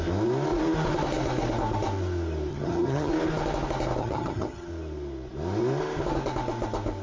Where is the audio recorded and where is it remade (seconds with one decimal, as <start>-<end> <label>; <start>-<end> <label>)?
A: 0.0-2.5 recorded; 2.5-3.1 remade; 3.1-4.0 recorded; 4.0-4.7 remade; 4.7-7.0 recorded